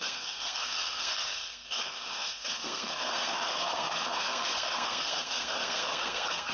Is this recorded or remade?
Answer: remade